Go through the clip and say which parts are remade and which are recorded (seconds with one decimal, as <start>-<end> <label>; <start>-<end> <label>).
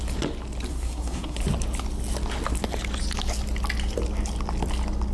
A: 0.0-0.7 recorded; 0.7-1.4 remade; 1.4-5.1 recorded